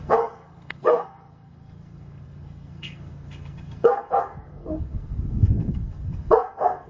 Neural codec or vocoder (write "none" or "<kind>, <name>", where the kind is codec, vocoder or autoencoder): codec, SNAC